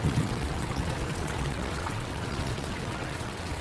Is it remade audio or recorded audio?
remade